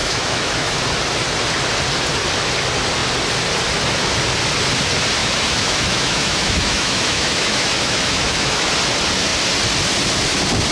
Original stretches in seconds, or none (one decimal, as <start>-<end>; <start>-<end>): 0.8-5.2; 8.7-10.7